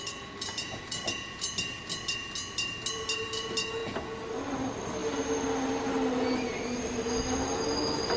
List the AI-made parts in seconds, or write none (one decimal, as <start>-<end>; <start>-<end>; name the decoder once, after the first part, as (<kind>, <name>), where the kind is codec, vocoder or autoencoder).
none

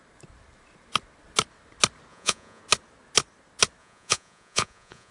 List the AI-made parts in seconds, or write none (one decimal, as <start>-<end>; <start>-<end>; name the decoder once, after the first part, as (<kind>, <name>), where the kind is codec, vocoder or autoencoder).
2.1-2.6 (vocoder, Vocos); 3.8-5.1

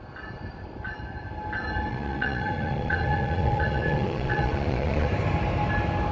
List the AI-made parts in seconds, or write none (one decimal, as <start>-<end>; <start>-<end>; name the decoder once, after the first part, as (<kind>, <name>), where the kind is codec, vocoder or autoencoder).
1.9-5.1 (vocoder, Vocos)

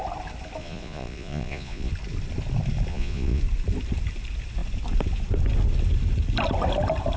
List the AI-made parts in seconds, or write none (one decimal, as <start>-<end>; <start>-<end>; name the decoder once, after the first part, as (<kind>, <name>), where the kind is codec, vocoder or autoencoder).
0.6-1.9 (vocoder, Vocos); 2.9-3.4